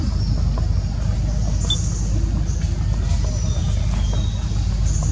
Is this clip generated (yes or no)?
no